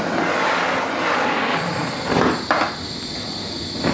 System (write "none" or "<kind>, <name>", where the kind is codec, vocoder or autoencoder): none